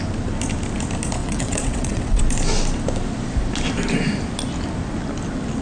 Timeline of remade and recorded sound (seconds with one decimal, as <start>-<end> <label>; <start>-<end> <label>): 0.0-1.2 recorded; 1.2-2.2 remade; 2.2-5.6 recorded